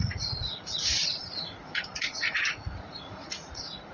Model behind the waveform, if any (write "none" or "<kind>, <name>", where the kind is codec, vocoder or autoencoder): vocoder, Vocos